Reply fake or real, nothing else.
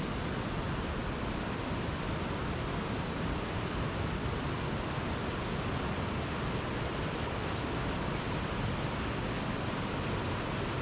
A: real